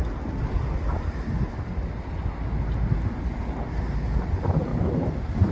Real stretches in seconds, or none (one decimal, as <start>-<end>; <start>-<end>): 0.0-5.5